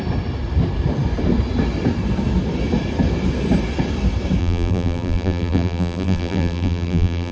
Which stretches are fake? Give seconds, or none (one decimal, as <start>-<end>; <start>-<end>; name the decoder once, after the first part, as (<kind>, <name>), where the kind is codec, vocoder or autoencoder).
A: 4.4-7.3 (vocoder, BigVGAN v2)